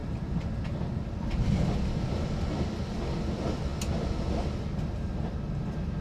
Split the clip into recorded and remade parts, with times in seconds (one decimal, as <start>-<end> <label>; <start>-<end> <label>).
0.0-6.0 recorded